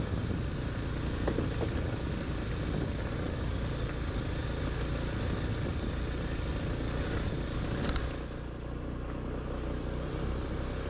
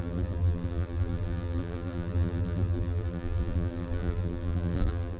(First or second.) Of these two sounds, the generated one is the second